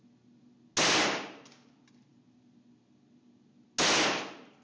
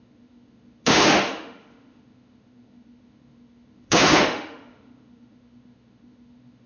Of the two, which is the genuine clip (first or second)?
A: first